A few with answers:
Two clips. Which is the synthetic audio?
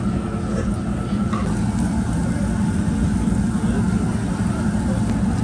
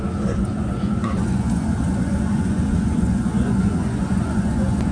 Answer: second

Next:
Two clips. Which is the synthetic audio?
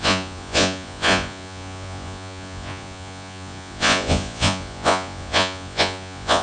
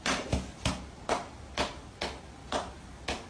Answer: first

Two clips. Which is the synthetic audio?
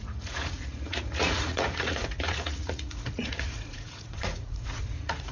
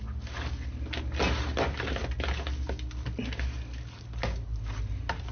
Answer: first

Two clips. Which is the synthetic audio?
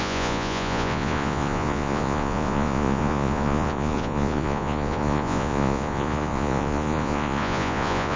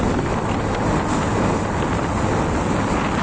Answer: first